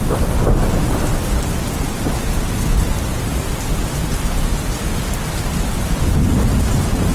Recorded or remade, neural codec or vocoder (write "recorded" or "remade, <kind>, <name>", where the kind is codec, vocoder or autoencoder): recorded